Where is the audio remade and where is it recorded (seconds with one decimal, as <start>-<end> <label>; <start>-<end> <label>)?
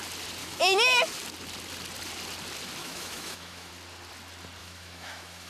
0.0-0.4 recorded; 0.4-1.0 remade; 1.0-2.8 recorded; 2.8-3.7 remade; 3.7-4.6 recorded; 4.6-5.5 remade